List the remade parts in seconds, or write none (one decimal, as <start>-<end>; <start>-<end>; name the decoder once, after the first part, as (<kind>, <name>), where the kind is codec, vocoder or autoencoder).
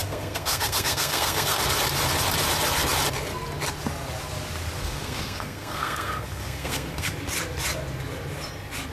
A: 0.0-1.6 (codec, SNAC); 4.8-7.1